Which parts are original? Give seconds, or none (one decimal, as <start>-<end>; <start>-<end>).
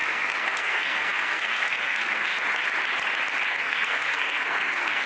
2.3-3.5